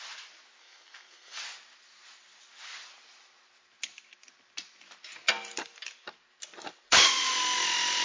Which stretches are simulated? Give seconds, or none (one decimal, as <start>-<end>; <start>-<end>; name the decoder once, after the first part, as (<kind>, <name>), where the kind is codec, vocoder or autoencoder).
0.6-1.4 (codec, SNAC)